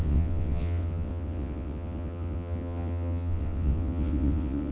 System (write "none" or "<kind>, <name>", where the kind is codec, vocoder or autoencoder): vocoder, WaveNeXt